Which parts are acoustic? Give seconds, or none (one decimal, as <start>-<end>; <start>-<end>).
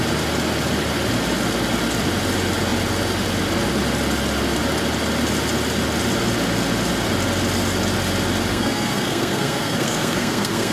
0.0-8.5